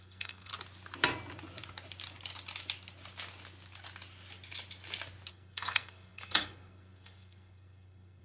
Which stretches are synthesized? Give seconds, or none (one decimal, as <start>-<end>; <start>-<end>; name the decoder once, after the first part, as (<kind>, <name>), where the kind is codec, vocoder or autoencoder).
0.0-0.5 (codec, SNAC); 5.3-8.2